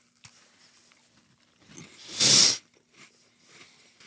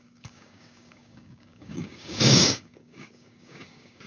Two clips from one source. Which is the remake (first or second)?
second